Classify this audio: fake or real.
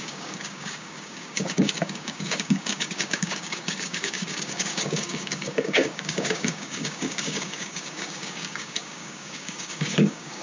fake